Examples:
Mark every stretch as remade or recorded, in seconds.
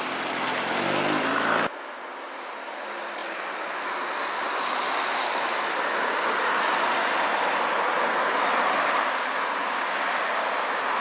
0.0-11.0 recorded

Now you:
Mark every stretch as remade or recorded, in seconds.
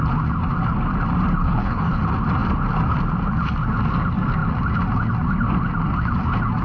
0.0-1.4 recorded; 1.4-2.0 remade; 2.0-6.6 recorded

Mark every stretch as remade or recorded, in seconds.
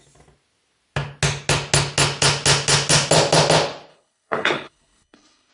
0.0-3.9 recorded; 3.9-5.5 remade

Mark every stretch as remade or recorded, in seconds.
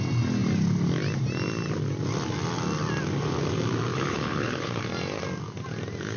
0.0-3.9 recorded; 3.9-4.8 remade; 4.8-6.2 recorded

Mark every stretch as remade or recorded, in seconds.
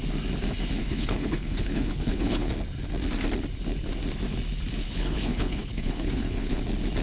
0.0-0.8 recorded; 0.8-2.5 remade; 2.5-4.8 recorded; 4.8-6.6 remade; 6.6-7.0 recorded